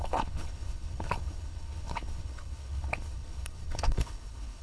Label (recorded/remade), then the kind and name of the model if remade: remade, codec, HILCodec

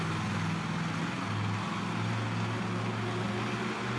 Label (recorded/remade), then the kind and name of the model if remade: recorded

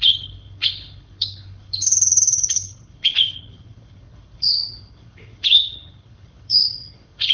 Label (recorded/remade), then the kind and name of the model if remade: remade, codec, HILCodec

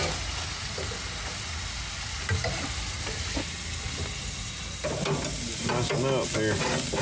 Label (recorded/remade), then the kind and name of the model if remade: recorded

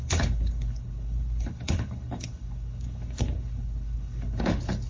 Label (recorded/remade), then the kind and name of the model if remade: remade, codec, HILCodec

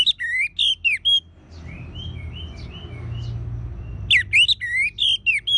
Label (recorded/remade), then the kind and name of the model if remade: recorded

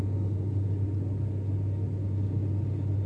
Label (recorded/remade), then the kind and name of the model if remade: recorded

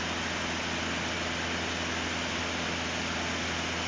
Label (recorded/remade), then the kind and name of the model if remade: recorded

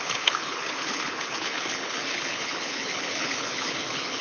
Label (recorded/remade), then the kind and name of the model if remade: remade, codec, HILCodec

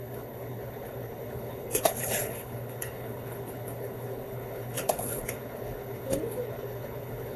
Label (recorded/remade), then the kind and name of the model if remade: remade, codec, HILCodec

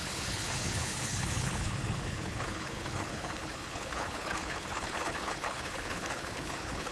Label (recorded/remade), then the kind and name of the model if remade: remade, codec, HILCodec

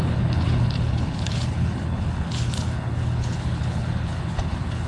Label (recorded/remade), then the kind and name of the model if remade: remade, codec, HILCodec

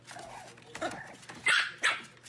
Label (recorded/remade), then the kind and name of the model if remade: recorded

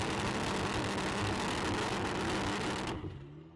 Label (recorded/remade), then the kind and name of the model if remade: recorded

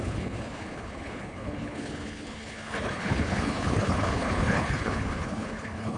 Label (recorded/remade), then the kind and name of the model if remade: remade, codec, HILCodec